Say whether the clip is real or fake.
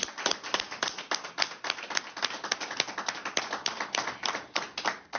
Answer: real